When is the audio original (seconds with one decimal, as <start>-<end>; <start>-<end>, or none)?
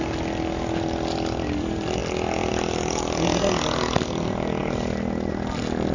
0.0-5.9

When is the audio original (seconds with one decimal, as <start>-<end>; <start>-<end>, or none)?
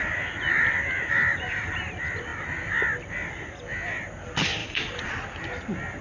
0.0-1.3; 1.8-4.6; 5.1-6.0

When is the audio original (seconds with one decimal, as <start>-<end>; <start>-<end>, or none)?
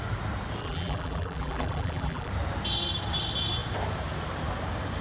0.0-0.6; 2.3-5.0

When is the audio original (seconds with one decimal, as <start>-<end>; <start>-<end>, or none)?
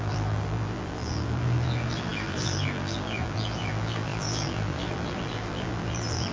none